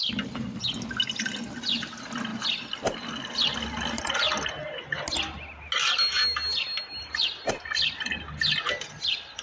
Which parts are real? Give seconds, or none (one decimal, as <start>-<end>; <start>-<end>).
0.0-9.4